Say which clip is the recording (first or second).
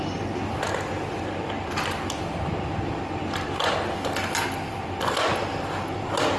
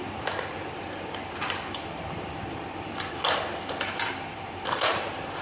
first